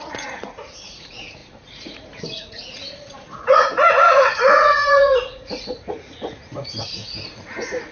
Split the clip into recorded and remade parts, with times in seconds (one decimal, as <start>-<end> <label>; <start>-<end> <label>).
0.0-7.9 remade

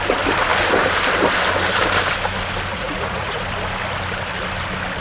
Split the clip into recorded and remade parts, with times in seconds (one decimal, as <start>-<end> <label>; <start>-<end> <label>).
0.0-2.7 recorded; 2.7-3.4 remade; 3.4-5.0 recorded

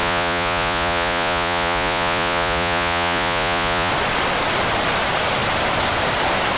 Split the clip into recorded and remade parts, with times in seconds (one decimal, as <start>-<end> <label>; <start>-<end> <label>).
0.0-3.9 remade; 3.9-6.6 recorded